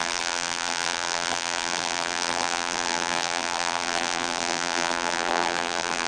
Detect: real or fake fake